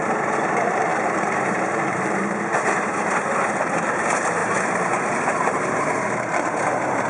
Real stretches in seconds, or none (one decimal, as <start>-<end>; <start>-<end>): 2.5-3.0